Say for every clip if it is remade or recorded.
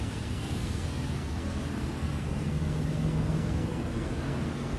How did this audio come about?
remade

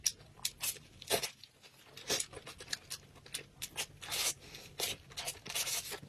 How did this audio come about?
recorded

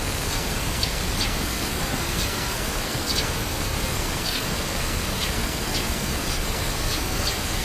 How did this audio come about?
remade